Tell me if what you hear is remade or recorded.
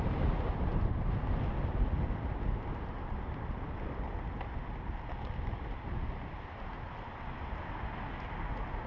recorded